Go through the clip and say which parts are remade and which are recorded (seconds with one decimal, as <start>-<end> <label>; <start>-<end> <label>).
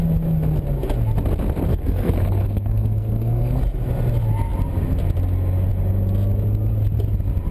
0.0-1.7 recorded; 1.7-3.6 remade; 3.6-7.5 recorded